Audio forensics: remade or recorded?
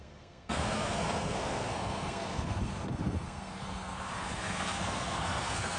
remade